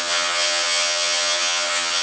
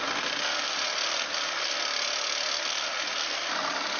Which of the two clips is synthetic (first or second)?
first